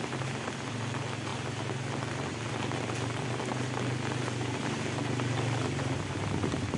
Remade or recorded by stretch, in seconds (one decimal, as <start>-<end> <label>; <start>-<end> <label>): 0.0-6.8 recorded